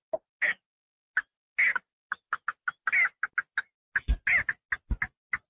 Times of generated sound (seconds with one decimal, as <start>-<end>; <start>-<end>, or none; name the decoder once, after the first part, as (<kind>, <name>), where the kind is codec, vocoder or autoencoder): none